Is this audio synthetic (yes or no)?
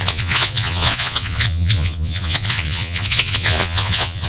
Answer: yes